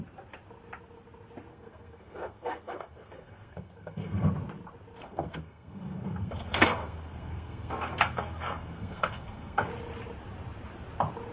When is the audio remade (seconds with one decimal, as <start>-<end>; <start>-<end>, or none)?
1.5-4.3; 5.0-9.7